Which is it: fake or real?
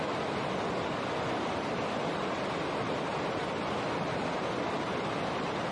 real